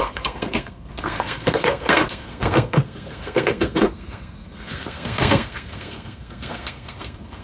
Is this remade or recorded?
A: remade